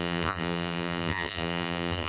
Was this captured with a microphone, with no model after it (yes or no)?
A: no